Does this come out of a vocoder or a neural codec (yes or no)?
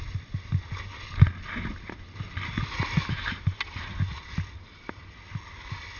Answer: no